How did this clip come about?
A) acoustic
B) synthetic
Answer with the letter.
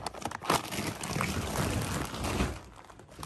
A